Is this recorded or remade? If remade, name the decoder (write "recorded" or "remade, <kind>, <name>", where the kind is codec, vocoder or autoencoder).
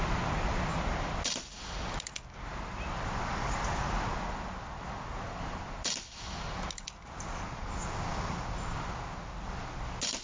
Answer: recorded